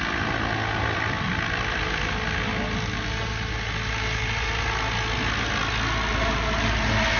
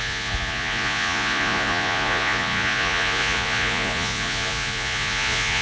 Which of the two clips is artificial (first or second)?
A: second